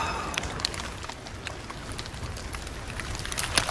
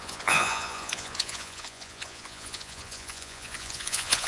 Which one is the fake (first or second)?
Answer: second